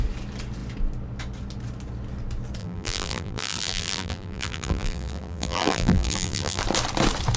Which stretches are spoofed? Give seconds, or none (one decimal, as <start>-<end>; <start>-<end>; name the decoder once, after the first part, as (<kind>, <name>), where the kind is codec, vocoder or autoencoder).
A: 2.6-6.6 (vocoder, BigVGAN v2)